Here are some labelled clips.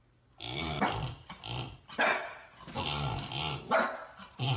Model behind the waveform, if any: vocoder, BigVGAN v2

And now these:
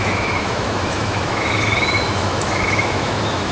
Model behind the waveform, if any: autoencoder, DAC-VAE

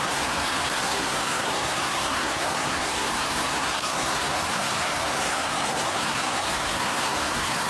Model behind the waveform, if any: codec, SNAC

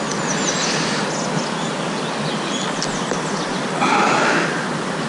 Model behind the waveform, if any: none